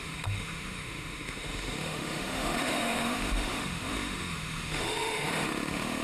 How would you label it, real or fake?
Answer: fake